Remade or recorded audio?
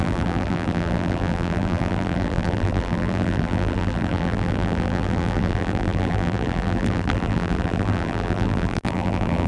remade